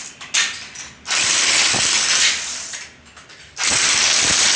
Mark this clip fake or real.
real